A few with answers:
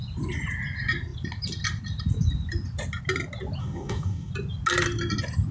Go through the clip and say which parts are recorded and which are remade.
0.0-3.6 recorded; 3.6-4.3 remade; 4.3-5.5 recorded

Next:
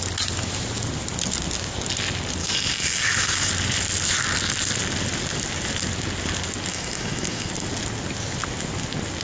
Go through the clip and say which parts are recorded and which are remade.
0.0-2.4 recorded; 2.4-3.5 remade; 3.5-6.7 recorded; 6.7-7.5 remade; 7.5-9.2 recorded

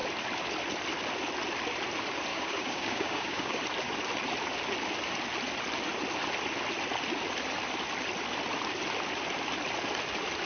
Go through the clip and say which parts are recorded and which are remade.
0.0-2.3 recorded; 2.3-3.6 remade; 3.6-10.5 recorded